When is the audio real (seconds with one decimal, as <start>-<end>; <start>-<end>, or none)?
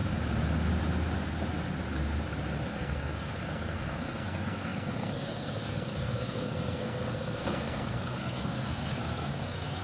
0.0-2.7